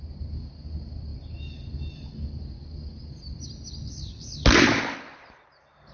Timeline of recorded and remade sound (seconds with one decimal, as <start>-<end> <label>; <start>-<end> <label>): 0.0-5.9 recorded

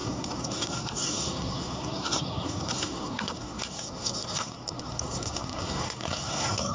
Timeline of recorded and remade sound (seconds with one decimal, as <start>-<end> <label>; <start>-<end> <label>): 0.0-6.7 remade

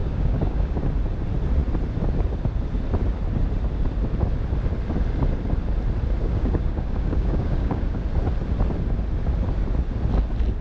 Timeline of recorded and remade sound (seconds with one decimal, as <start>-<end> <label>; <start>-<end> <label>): 0.0-0.8 remade; 0.8-6.2 recorded; 6.2-8.0 remade; 8.0-10.6 recorded

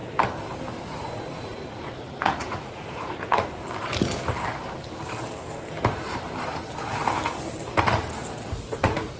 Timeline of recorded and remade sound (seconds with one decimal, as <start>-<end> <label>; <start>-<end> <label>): 0.0-0.8 recorded; 0.8-3.6 remade; 3.6-8.4 recorded; 8.4-9.2 remade

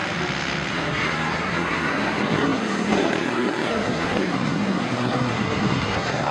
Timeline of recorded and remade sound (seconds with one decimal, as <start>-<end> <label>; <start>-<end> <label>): 0.0-0.7 recorded; 0.7-6.3 remade